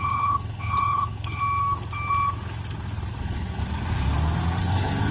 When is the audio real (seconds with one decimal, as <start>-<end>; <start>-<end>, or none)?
1.4-3.2; 3.6-4.6